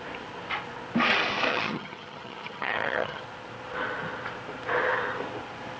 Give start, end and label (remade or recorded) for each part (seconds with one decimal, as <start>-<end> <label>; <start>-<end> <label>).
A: 0.0-1.5 recorded; 1.5-3.2 remade; 3.2-5.8 recorded